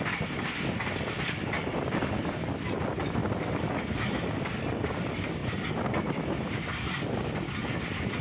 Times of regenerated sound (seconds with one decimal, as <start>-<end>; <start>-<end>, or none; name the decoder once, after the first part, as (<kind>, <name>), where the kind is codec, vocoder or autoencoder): 0.0-8.2 (vocoder, BigVGAN v2)